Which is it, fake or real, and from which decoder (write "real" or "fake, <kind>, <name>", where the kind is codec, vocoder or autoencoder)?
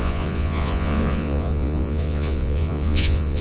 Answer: fake, vocoder, Vocos